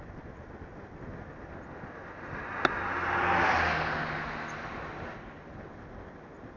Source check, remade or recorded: recorded